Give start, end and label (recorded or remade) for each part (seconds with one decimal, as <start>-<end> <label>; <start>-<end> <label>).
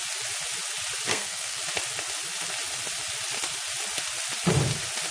0.0-1.1 recorded; 1.1-1.6 remade; 1.6-5.1 recorded